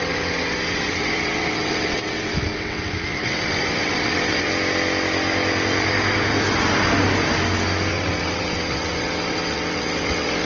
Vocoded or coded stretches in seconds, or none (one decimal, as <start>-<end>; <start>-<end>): 0.0-4.5; 7.9-10.4